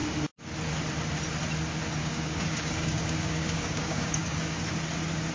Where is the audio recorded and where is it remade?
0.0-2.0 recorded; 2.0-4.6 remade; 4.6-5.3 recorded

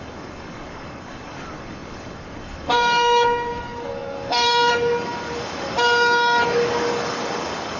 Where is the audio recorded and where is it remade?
0.0-7.8 remade

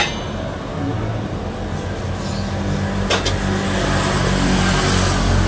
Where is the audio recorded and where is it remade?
0.0-5.5 recorded

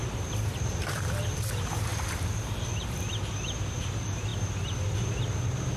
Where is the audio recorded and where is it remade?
0.0-5.8 recorded

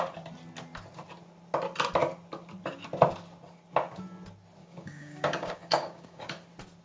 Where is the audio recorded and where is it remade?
0.0-4.6 recorded; 4.6-6.3 remade; 6.3-6.8 recorded